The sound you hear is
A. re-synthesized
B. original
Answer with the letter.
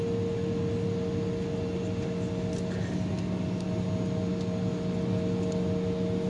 B